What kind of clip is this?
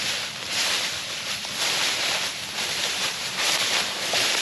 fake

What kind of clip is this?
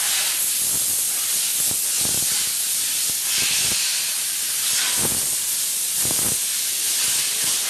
real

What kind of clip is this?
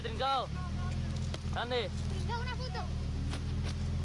real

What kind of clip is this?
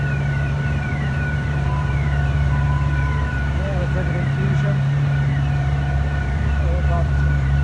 fake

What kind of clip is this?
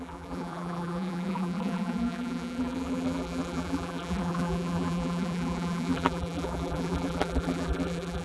fake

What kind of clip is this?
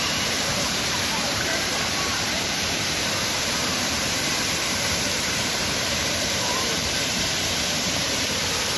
fake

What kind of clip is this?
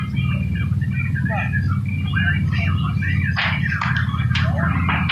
real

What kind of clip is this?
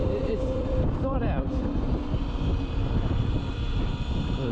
fake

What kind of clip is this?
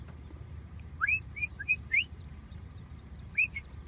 fake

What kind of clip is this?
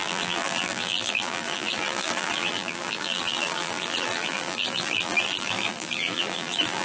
fake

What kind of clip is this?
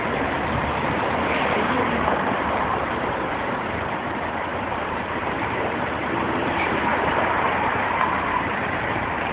fake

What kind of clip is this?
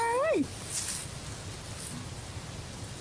real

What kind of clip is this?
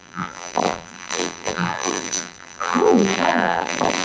fake